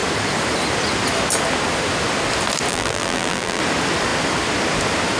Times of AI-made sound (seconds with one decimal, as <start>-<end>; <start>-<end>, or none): 2.7-3.6